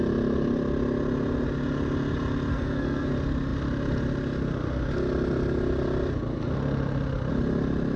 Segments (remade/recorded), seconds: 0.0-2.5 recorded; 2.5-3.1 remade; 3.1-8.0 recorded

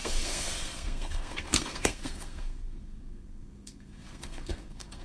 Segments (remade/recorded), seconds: 0.0-5.0 remade

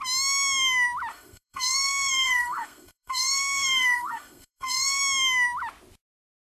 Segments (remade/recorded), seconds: 0.0-1.1 recorded; 1.1-5.0 remade; 5.0-6.5 recorded

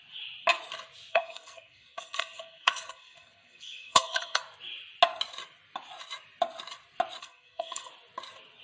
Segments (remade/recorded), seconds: 0.0-1.1 recorded; 1.1-4.4 remade; 4.4-7.2 recorded; 7.2-7.9 remade; 7.9-8.6 recorded

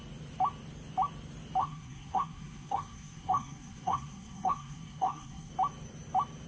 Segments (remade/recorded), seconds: 0.0-1.6 recorded; 1.6-5.5 remade; 5.5-6.5 recorded

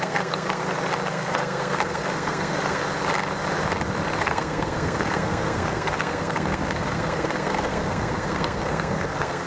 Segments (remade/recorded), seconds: 0.0-0.6 remade; 0.6-1.1 recorded; 1.1-2.8 remade; 2.8-4.2 recorded; 4.2-9.5 remade